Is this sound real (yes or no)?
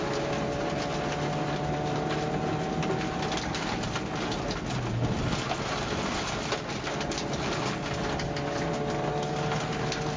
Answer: yes